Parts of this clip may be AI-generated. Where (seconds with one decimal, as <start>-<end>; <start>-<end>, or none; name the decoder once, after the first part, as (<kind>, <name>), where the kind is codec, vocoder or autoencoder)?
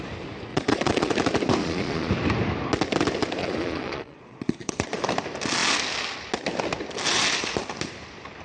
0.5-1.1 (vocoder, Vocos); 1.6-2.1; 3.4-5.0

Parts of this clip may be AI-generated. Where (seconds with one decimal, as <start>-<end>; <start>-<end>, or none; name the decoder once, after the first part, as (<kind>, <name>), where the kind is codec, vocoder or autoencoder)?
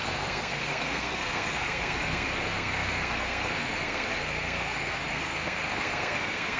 0.0-6.6 (codec, SNAC)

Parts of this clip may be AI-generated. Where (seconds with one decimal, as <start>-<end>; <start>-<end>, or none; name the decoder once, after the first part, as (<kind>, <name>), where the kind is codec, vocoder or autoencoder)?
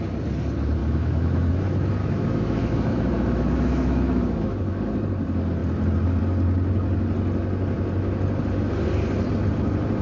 0.8-1.5 (autoencoder, DAC-VAE); 2.0-4.8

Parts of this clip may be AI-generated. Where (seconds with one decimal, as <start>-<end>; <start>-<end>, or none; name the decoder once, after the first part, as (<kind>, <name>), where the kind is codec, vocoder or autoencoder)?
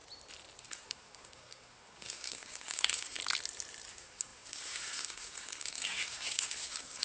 0.6-3.2 (codec, SNAC); 3.9-7.0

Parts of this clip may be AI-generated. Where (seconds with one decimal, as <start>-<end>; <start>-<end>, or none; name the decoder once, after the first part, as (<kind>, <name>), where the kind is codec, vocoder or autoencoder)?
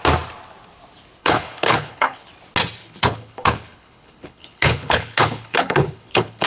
1.2-2.3 (codec, HILCodec); 2.8-6.5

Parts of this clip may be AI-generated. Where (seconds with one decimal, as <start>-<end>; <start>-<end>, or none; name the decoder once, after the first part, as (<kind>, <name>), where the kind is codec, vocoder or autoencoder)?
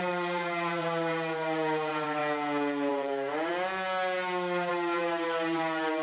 0.0-2.2 (vocoder, BigVGAN v2); 2.9-3.5; 4.7-6.0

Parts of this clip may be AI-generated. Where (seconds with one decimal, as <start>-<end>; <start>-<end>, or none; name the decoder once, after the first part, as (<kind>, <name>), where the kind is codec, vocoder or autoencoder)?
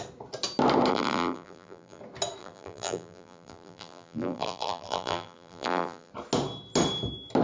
0.9-2.0 (vocoder, BigVGAN v2); 2.4-6.1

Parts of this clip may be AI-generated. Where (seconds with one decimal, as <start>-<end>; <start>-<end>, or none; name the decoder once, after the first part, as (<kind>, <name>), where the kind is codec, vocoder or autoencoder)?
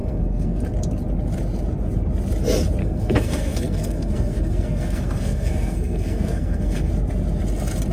0.0-0.6 (codec, SNAC); 2.8-6.9